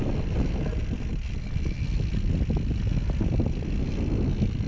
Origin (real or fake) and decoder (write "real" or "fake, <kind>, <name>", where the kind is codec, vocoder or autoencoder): real